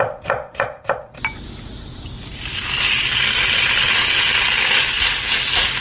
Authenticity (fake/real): real